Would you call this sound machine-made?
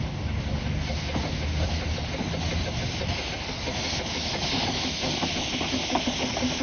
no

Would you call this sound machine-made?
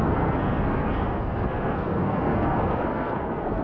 yes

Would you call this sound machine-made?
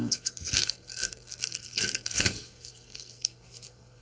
yes